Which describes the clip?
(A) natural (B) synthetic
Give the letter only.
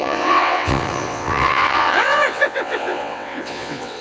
B